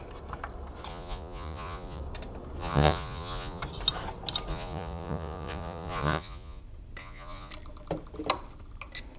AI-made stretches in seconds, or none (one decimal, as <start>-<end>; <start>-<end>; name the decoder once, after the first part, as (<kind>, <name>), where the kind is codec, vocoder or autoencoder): 0.9-2.0 (vocoder, Vocos); 2.6-3.6; 4.5-6.6; 7.0-7.5